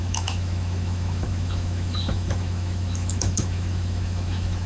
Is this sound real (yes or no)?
no